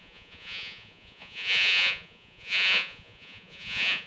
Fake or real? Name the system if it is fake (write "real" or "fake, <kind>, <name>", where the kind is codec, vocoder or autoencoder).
fake, vocoder, Vocos